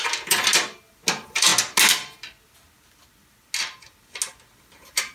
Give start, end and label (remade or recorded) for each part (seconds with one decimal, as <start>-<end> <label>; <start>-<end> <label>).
0.0-0.5 remade; 0.5-1.1 recorded; 1.1-1.5 remade; 1.5-4.6 recorded; 4.6-5.1 remade